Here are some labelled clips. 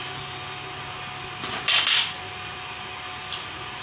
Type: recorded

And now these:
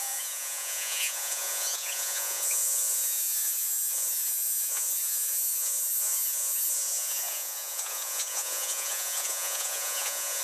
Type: remade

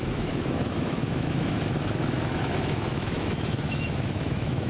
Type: remade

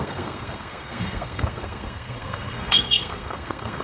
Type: remade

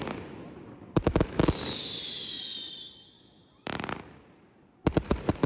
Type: recorded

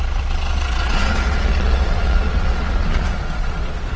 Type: remade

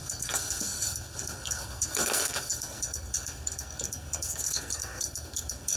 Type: remade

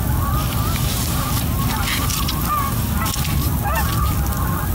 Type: recorded